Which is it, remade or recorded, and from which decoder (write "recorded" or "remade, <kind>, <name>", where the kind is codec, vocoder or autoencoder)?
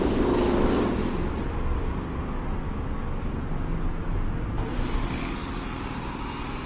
recorded